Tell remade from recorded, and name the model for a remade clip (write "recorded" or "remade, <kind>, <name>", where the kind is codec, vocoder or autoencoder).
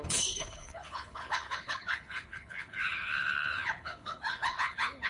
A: remade, codec, HILCodec